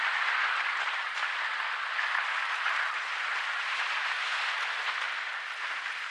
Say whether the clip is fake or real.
real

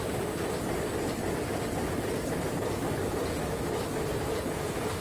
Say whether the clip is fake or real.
real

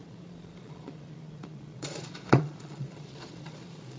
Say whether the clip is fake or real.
fake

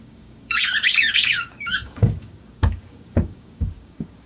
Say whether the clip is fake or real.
fake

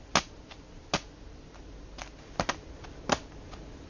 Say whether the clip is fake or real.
real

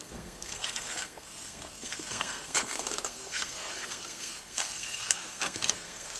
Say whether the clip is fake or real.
fake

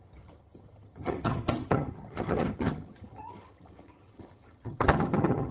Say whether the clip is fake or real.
fake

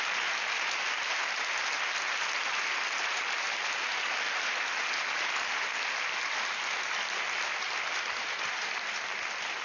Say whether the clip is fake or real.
real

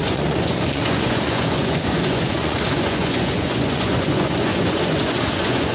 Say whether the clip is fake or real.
fake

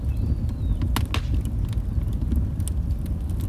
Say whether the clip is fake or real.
real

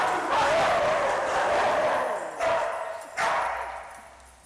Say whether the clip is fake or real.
real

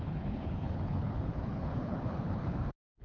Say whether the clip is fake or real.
fake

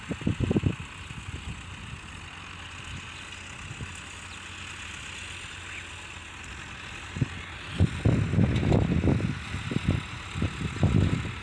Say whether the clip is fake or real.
real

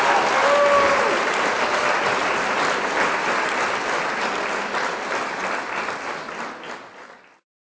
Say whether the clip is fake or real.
real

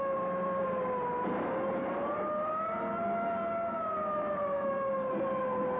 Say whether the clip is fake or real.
real